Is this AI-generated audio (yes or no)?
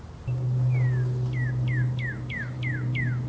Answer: no